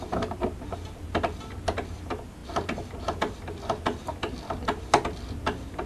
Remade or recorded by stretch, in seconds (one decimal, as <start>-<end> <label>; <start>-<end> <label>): 0.0-5.9 recorded